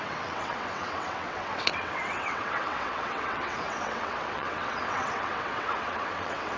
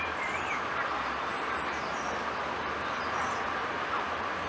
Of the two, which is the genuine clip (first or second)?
second